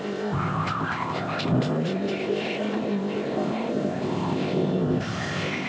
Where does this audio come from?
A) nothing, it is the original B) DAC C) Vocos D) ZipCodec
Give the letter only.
D